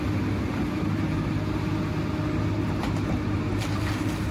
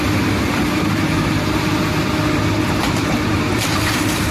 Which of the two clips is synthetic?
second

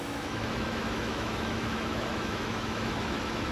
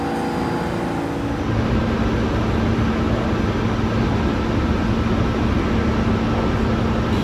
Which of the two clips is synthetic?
first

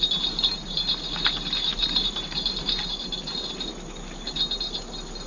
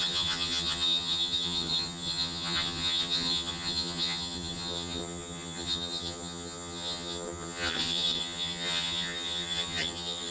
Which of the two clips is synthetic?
second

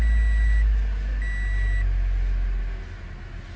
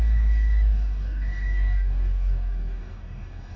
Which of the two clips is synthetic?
second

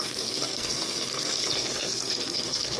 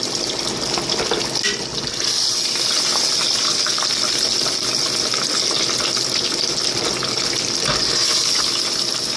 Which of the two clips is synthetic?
first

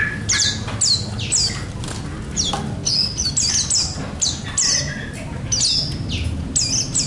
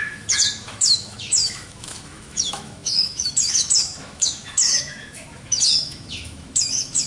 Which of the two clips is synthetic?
second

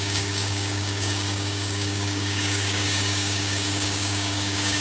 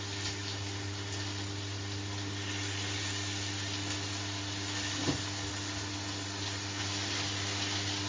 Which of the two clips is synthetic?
first